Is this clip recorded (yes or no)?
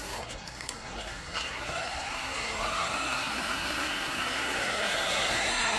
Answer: no